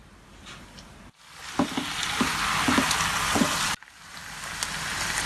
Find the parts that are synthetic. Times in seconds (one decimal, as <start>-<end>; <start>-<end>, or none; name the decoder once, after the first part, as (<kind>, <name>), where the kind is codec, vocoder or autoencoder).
none